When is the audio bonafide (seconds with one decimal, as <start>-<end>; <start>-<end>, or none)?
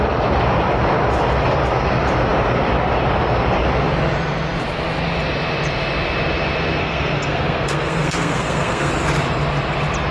0.0-6.8; 8.9-10.1